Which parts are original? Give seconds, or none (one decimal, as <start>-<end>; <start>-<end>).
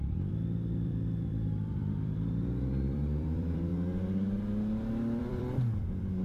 3.7-5.2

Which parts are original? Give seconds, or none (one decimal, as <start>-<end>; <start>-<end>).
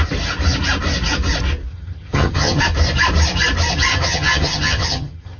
0.0-1.7; 2.6-3.9